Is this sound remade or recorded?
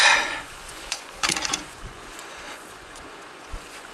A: remade